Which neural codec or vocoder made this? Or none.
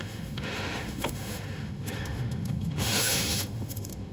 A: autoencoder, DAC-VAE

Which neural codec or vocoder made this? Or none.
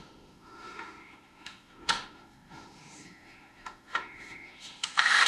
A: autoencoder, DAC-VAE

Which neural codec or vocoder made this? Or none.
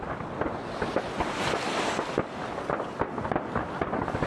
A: none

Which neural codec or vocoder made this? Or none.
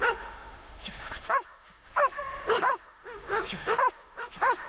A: autoencoder, DAC-VAE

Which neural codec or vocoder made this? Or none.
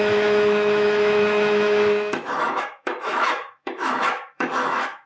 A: autoencoder, DAC-VAE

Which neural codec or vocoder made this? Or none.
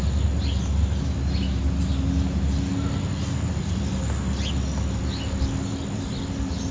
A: none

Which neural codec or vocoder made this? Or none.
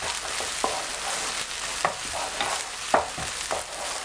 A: none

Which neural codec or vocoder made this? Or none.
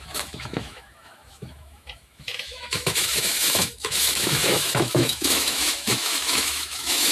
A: autoencoder, DAC-VAE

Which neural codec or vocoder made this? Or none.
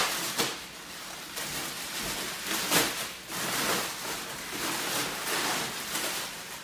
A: none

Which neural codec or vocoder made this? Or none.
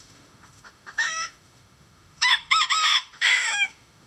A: autoencoder, DAC-VAE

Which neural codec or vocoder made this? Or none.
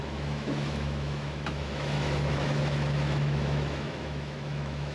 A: autoencoder, DAC-VAE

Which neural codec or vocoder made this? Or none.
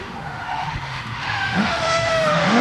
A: autoencoder, DAC-VAE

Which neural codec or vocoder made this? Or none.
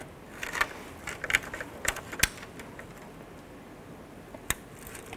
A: none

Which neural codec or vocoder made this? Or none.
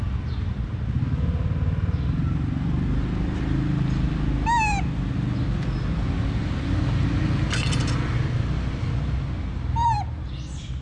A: none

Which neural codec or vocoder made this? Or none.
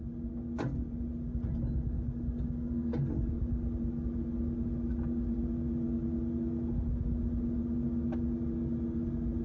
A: none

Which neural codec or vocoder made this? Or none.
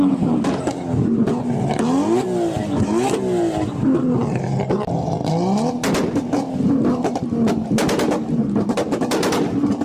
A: none